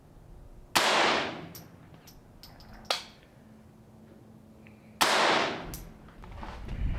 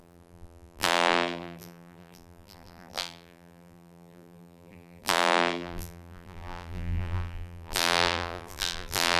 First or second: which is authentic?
first